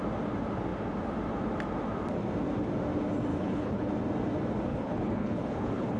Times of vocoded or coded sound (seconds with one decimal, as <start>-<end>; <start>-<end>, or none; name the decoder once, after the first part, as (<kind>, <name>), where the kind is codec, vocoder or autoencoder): 3.3-3.9 (codec, HILCodec); 4.7-6.0